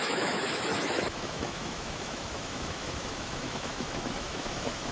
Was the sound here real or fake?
fake